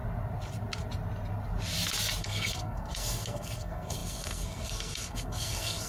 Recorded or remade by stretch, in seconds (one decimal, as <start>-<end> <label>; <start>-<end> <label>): 0.0-2.2 recorded; 2.2-5.9 remade